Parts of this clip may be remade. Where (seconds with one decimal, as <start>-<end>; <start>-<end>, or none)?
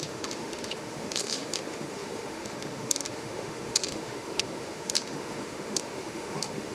0.0-6.7